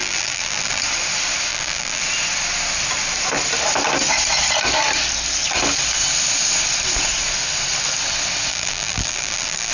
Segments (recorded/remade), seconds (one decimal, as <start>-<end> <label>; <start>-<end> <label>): 0.0-0.8 remade; 0.8-1.5 recorded; 1.5-2.0 remade; 2.0-8.5 recorded; 8.5-9.7 remade

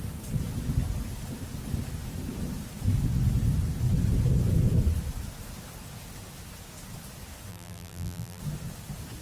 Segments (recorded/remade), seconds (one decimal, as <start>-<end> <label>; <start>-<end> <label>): 0.0-7.5 recorded; 7.5-8.4 remade; 8.4-9.2 recorded

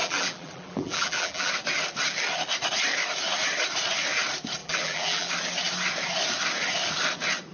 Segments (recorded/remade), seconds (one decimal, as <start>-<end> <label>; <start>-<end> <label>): 0.0-1.5 remade; 1.5-4.6 recorded; 4.6-5.3 remade; 5.3-7.5 recorded

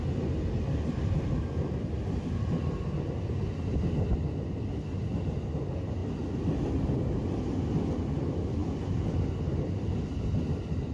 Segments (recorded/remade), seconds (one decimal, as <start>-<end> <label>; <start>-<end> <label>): 0.0-8.6 recorded; 8.6-9.2 remade; 9.2-10.9 recorded

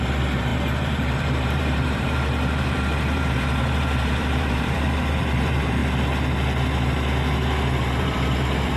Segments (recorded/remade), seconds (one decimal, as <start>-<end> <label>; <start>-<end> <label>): 0.0-5.8 remade; 5.8-8.0 recorded; 8.0-8.8 remade

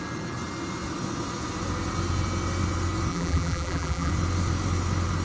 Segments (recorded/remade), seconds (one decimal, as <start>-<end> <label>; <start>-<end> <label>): 0.0-3.1 recorded; 3.1-4.1 remade; 4.1-5.2 recorded

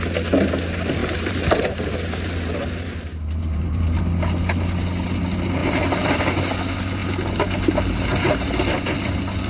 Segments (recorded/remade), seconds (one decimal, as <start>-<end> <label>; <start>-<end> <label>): 0.0-1.0 recorded; 1.0-4.0 remade; 4.0-5.6 recorded; 5.6-6.2 remade; 6.2-9.5 recorded